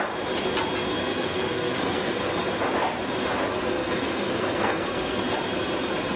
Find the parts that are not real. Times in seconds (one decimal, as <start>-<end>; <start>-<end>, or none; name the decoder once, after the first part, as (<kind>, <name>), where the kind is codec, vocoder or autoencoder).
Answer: 1.0-2.3 (codec, SNAC); 3.8-5.2